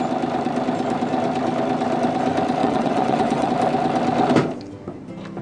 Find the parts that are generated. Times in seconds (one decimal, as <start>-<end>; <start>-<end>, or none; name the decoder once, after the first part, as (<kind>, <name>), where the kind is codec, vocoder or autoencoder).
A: 2.6-3.5 (vocoder, WaveNeXt)

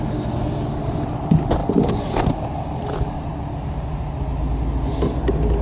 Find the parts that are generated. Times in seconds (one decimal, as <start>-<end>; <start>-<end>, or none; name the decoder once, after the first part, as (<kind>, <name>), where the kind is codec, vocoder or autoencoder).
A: none

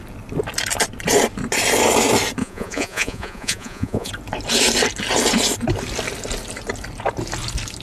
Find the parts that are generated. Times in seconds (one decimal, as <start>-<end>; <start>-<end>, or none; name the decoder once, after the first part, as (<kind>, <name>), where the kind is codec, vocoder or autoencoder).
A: 2.4-4.1 (vocoder, Vocos)

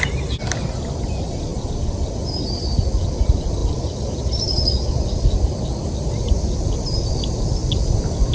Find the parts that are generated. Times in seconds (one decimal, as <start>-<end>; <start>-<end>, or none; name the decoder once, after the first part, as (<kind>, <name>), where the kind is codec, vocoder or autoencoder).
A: none

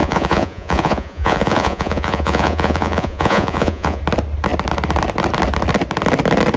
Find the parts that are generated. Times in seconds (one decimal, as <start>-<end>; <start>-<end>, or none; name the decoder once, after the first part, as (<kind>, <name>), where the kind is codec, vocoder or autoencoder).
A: 0.0-4.0 (vocoder, Vocos)

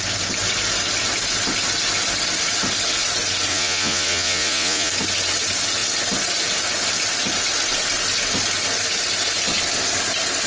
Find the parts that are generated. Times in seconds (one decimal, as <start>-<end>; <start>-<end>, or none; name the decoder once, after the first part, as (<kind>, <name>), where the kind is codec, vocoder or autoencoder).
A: 3.5-4.9 (vocoder, Vocos)